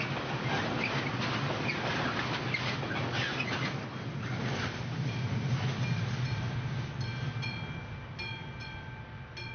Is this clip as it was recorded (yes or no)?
yes